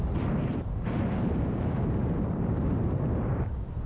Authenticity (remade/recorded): remade